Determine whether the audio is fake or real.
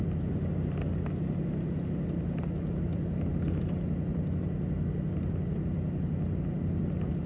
real